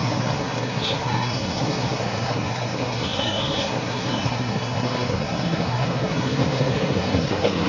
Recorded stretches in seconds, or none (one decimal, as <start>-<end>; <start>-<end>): none